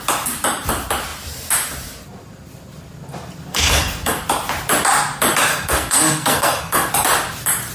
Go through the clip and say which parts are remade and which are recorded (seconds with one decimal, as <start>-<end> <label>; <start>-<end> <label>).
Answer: 0.0-3.5 recorded; 3.5-4.2 remade; 4.2-5.5 recorded; 5.5-6.9 remade; 6.9-7.7 recorded